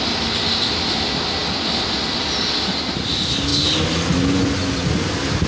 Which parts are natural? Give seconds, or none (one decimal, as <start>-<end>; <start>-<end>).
0.0-5.5